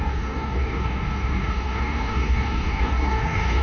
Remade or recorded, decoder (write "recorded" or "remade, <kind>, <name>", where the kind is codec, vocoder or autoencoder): remade, codec, DAC